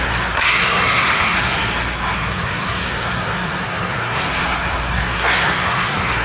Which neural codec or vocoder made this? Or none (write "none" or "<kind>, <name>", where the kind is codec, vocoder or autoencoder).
codec, SNAC